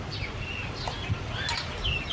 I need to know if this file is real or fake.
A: real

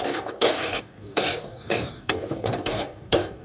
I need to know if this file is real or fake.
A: fake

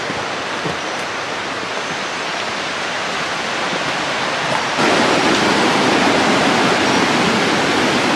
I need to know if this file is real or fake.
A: real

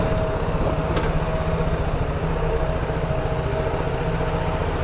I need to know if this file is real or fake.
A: real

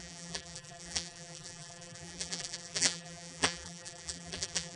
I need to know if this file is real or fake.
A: fake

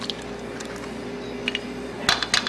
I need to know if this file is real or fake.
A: real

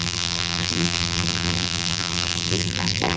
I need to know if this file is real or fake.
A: fake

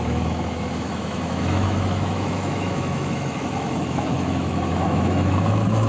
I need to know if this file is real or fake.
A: fake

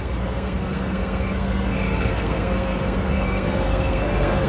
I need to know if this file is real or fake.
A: fake